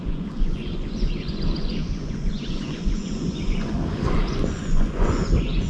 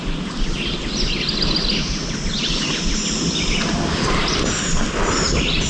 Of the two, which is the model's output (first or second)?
first